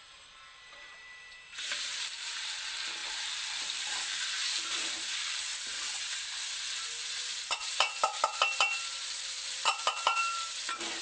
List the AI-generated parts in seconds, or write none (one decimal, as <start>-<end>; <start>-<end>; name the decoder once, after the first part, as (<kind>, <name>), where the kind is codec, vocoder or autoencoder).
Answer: 0.0-5.5 (vocoder, BigVGAN v2); 7.2-11.0